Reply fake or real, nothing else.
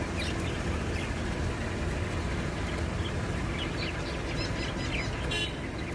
real